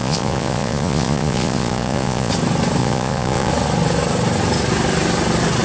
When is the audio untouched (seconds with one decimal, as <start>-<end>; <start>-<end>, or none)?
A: 2.3-2.8; 3.5-5.6